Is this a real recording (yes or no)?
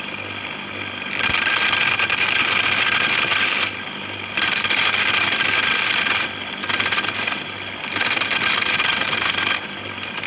yes